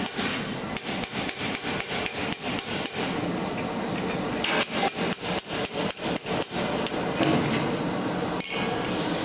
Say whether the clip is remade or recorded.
recorded